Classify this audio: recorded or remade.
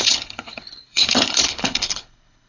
remade